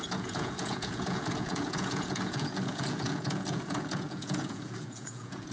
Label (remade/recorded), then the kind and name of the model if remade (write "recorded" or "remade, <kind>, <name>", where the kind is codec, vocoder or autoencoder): remade, vocoder, Vocos